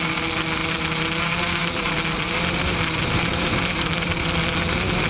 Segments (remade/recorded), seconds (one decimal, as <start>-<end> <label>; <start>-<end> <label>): 0.0-1.6 recorded; 1.6-4.3 remade; 4.3-5.1 recorded